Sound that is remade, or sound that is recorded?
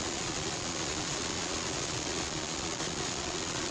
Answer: remade